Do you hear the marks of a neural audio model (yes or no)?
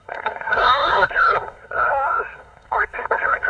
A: yes